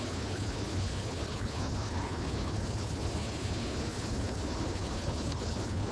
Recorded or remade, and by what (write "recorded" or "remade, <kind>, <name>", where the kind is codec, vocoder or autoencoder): remade, codec, HILCodec